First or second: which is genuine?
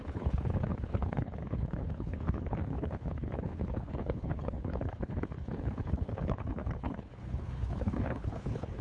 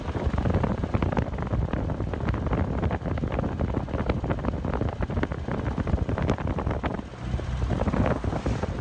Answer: second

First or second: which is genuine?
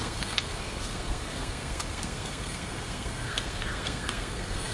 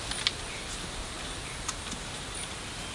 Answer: second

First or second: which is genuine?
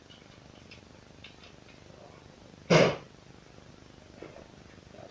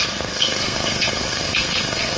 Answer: first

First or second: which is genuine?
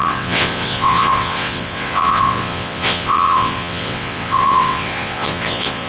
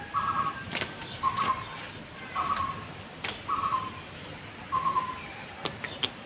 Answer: second